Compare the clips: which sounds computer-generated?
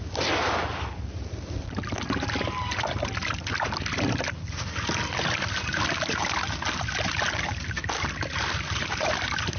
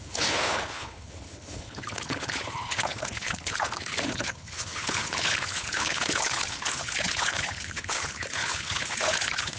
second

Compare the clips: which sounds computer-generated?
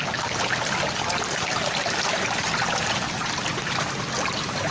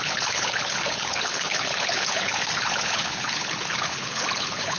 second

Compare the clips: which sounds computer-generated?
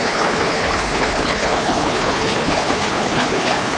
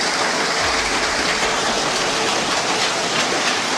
first